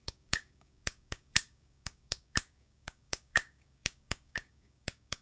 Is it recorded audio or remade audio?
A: remade